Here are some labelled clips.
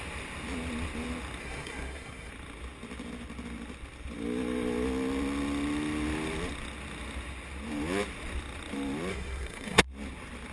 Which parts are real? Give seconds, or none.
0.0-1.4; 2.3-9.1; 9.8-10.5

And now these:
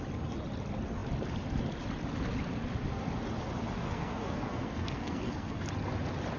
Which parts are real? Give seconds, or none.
0.0-3.8; 5.6-6.4

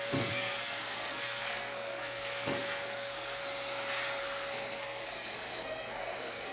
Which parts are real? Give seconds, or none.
3.4-4.2

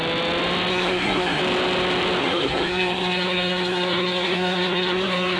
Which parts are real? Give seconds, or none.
0.0-0.7; 1.4-2.2

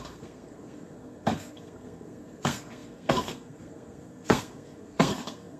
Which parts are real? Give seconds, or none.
none